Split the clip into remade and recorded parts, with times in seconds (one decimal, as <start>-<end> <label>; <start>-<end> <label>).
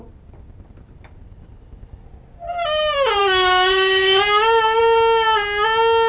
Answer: 0.0-3.2 recorded; 3.2-4.8 remade; 4.8-6.1 recorded